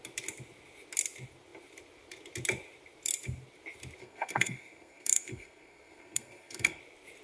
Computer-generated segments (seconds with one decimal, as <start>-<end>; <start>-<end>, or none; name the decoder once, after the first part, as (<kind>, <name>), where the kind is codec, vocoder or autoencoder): 4.0-6.8 (codec, SNAC)